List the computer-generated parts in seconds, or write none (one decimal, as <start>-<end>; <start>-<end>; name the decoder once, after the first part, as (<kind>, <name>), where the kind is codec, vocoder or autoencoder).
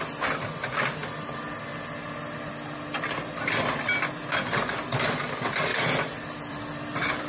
5.7-7.3 (vocoder, BigVGAN v2)